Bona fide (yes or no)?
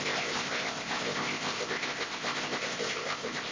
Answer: no